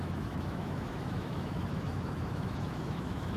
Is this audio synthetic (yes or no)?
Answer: yes